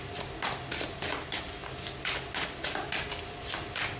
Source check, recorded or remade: recorded